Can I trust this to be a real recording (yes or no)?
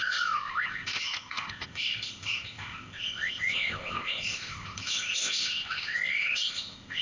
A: no